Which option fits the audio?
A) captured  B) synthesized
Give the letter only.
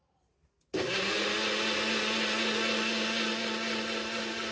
A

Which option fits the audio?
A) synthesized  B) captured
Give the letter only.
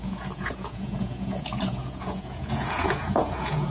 A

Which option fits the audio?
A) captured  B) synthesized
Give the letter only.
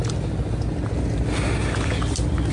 A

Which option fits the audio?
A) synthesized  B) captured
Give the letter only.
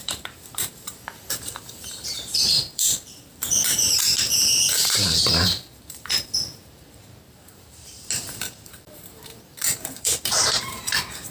A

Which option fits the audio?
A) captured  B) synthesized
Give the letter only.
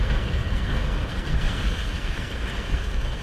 B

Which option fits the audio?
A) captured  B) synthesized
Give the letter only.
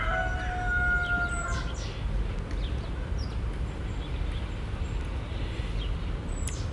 A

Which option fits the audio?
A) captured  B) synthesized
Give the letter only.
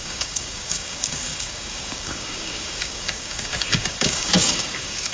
B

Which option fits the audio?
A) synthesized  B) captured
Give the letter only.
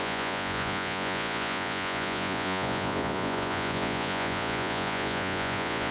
A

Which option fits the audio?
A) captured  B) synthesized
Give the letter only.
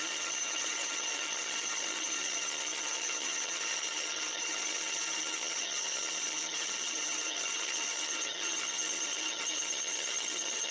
B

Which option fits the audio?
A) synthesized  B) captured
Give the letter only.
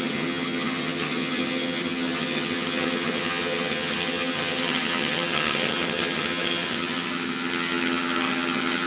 A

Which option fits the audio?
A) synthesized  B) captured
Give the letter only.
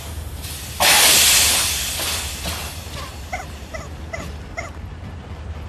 B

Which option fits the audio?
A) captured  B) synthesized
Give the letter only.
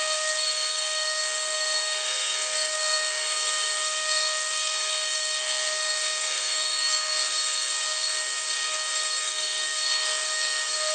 B